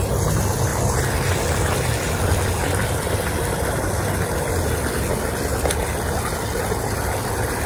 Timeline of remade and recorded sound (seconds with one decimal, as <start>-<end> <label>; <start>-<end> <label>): 0.0-7.7 recorded